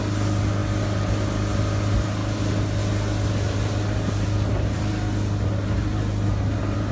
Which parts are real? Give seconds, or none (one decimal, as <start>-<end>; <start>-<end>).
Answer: 0.0-6.9

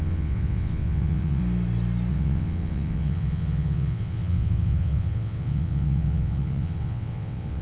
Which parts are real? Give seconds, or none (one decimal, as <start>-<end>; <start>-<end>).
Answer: 1.4-2.1

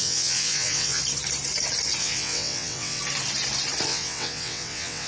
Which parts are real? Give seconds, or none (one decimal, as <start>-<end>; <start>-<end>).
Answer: 1.0-2.0; 3.0-3.9